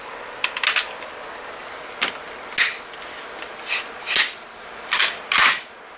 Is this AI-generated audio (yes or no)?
no